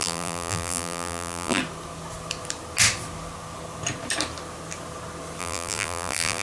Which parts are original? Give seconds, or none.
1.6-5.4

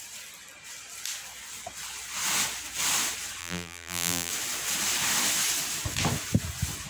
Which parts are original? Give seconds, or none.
0.0-3.4; 4.3-6.9